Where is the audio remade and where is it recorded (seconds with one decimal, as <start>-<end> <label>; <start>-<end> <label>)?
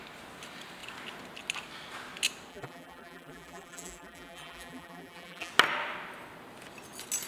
0.0-2.5 recorded; 2.5-5.5 remade; 5.5-7.3 recorded